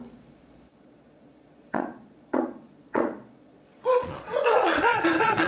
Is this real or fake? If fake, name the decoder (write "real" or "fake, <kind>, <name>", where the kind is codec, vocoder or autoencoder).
fake, vocoder, Vocos